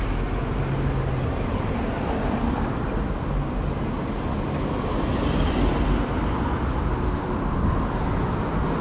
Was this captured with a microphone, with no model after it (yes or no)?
yes